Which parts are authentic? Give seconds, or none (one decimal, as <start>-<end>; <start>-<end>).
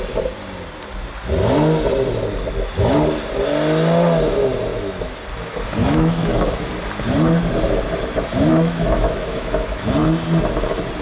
0.0-4.7; 5.2-5.8; 6.7-8.5; 9.9-11.0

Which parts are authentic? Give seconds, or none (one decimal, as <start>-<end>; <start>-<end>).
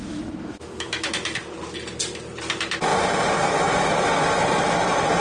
1.1-5.2